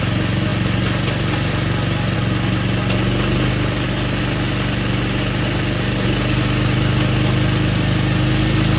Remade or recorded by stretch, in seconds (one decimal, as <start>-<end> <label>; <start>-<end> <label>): 0.0-8.8 recorded